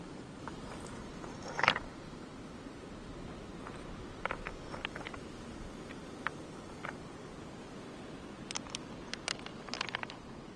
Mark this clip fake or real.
real